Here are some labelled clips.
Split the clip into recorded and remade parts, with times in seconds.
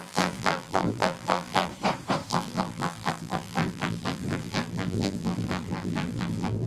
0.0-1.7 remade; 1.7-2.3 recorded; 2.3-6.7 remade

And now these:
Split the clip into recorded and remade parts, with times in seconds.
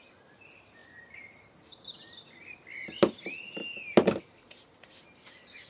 0.0-3.6 remade; 3.6-4.2 recorded; 4.2-5.7 remade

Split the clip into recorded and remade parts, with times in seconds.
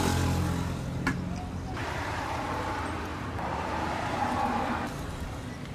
0.0-1.8 recorded; 1.8-2.7 remade; 2.7-3.1 recorded; 3.1-3.9 remade; 3.9-5.7 recorded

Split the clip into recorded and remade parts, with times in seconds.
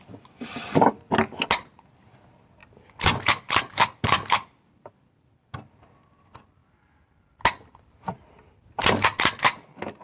0.0-10.0 recorded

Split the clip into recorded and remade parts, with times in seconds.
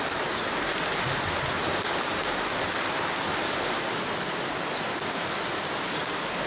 0.0-2.1 remade; 2.1-5.7 recorded; 5.7-6.5 remade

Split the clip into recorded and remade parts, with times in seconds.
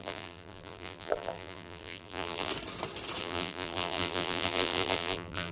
0.0-2.5 remade; 2.5-3.2 recorded; 3.2-5.5 remade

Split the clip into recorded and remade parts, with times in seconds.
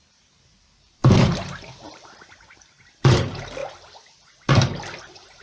0.0-3.6 remade; 3.6-5.0 recorded; 5.0-5.4 remade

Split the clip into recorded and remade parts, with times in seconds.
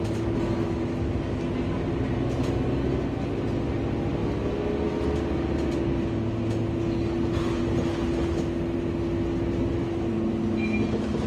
0.0-11.3 recorded